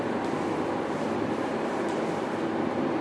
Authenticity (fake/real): real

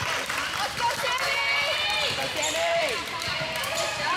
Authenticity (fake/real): fake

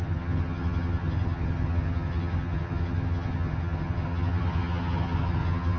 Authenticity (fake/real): fake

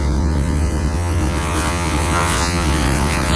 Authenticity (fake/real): fake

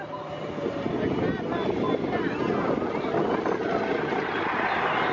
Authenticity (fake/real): real